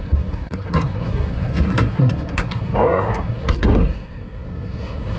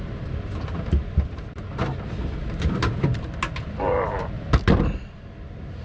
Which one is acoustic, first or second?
second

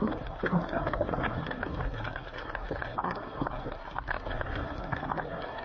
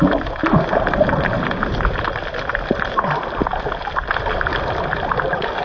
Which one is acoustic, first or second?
second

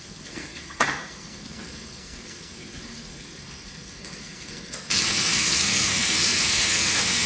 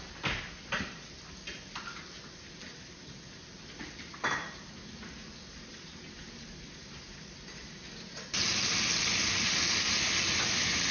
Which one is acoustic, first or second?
second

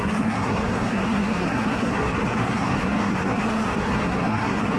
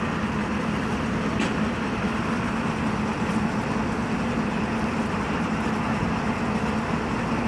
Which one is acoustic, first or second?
second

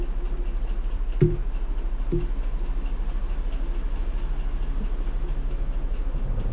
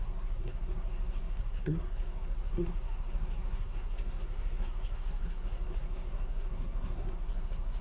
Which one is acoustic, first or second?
first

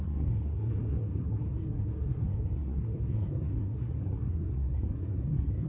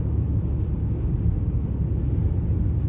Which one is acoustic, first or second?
second